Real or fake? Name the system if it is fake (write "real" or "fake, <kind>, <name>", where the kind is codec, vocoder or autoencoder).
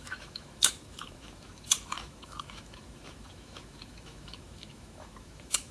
fake, autoencoder, DAC-VAE